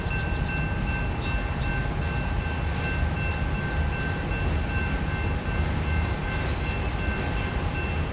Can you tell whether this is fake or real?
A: real